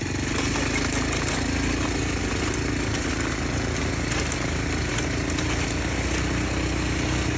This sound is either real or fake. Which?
real